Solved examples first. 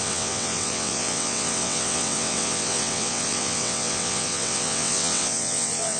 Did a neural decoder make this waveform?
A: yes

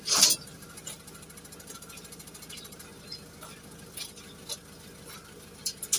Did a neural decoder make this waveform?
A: no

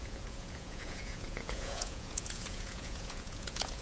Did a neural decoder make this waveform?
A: yes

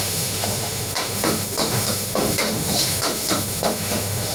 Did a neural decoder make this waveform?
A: yes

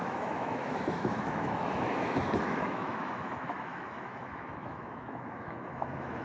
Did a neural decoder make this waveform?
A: yes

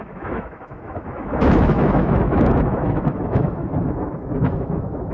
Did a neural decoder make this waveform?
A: yes